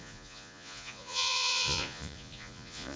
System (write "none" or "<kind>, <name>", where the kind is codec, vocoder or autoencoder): vocoder, Vocos